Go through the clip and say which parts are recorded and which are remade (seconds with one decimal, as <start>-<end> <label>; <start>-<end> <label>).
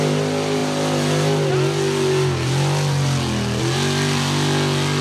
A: 0.0-5.0 recorded